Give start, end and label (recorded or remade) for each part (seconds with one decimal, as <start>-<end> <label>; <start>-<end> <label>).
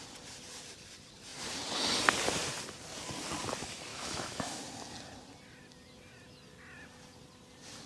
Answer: 0.0-3.9 recorded; 3.9-4.6 remade; 4.6-7.9 recorded